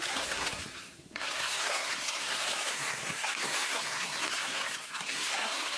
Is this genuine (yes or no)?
no